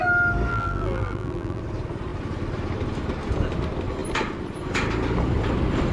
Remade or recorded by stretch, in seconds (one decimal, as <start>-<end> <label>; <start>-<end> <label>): 0.0-0.5 recorded; 0.5-1.6 remade; 1.6-5.9 recorded